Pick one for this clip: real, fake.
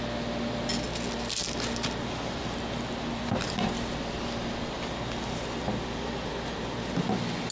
real